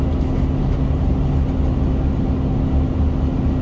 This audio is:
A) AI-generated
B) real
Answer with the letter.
B